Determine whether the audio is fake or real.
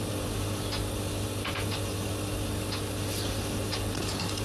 real